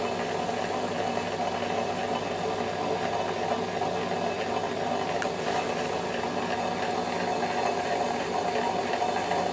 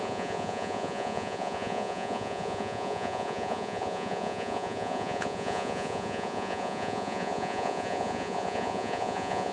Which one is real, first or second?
first